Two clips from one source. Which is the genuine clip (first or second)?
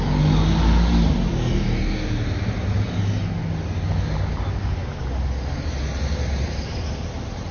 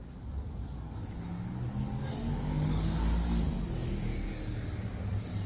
first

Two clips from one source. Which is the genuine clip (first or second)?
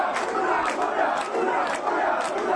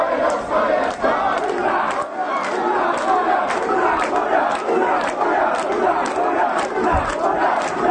first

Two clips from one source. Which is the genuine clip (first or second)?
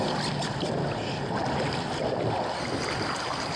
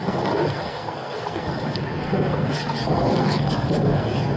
first